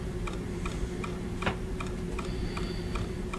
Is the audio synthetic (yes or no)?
yes